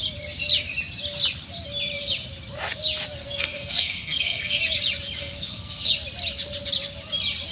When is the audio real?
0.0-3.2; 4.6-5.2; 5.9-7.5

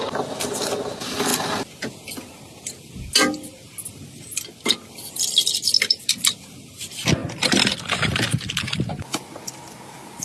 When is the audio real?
0.0-10.2